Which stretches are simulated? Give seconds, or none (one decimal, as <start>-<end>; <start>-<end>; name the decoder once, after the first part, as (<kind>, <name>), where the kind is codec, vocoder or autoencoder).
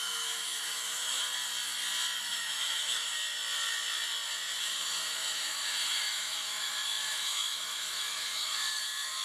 0.0-1.2 (autoencoder, DAC-VAE); 2.2-3.1; 4.6-9.2